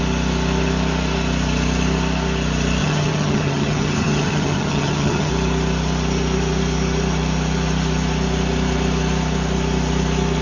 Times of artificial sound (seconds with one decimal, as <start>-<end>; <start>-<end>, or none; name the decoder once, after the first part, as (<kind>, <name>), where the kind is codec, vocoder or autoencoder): 2.8-5.3 (vocoder, HiFi-GAN)